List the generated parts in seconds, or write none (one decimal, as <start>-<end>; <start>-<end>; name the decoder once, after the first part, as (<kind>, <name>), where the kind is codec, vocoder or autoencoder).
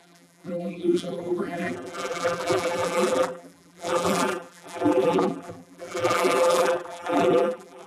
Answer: 0.0-7.9 (vocoder, BigVGAN v2)